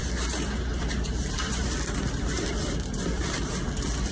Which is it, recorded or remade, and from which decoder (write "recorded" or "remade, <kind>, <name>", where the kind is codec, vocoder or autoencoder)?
recorded